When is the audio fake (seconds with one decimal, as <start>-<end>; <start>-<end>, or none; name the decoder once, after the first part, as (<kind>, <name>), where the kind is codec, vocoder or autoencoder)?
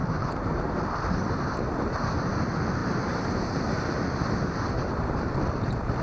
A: 0.0-0.8 (vocoder, BigVGAN v2); 2.8-5.4